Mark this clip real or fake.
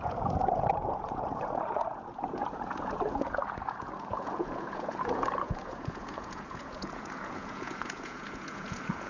fake